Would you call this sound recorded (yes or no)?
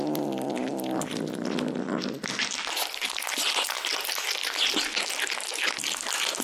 yes